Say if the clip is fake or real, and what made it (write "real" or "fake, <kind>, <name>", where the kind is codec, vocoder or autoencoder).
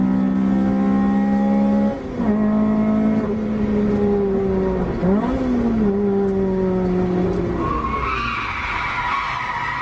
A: real